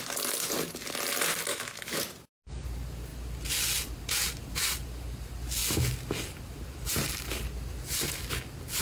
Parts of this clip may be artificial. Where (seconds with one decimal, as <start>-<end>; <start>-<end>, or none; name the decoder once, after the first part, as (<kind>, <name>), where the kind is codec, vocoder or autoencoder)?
1.5-2.0 (autoencoder, DAC-VAE)